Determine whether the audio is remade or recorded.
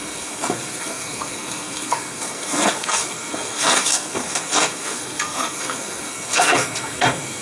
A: remade